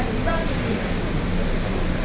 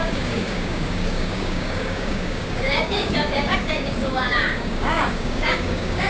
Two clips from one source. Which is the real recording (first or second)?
first